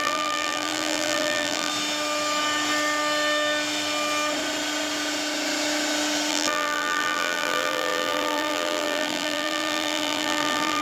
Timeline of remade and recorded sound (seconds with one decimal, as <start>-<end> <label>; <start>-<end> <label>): 0.0-1.7 remade; 1.7-6.3 recorded; 6.3-10.8 remade